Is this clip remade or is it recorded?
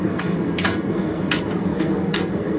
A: remade